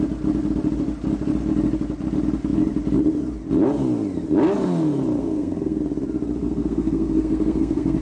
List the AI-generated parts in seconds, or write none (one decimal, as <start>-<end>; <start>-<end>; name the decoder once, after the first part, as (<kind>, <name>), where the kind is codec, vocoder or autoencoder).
5.2-5.8 (codec, SNAC); 6.4-8.0